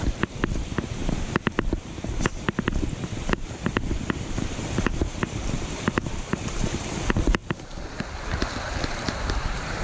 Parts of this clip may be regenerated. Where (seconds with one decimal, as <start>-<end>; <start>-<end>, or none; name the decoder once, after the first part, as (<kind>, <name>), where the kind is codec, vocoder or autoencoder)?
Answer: 0.0-1.0 (vocoder, BigVGAN v2); 3.0-7.4; 8.8-9.8